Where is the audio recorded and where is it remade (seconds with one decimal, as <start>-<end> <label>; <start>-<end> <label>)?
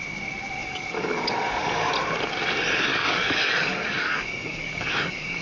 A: 0.0-0.6 recorded; 0.6-1.9 remade; 1.9-2.9 recorded; 2.9-5.4 remade